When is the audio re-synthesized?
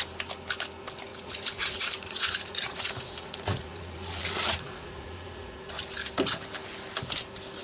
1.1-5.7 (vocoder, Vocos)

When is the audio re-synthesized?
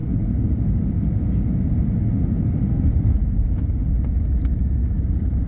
none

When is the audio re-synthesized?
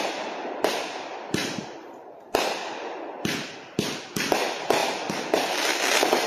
1.4-3.0 (vocoder, BigVGAN v2)